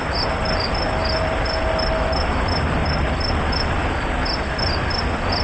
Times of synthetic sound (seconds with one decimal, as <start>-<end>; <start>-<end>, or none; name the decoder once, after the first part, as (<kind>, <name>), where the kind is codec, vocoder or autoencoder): none